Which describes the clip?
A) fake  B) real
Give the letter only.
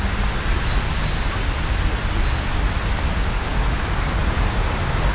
B